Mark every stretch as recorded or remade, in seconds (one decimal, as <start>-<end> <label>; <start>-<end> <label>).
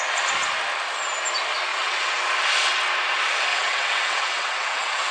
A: 0.0-1.7 recorded; 1.7-2.2 remade; 2.2-3.5 recorded; 3.5-5.1 remade